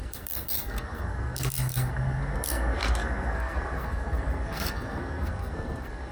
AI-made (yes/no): yes